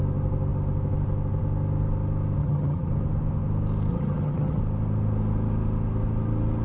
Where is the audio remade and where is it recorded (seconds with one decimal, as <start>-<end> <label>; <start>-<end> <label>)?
0.0-2.4 recorded; 2.4-2.9 remade; 2.9-3.9 recorded; 3.9-4.6 remade; 4.6-6.6 recorded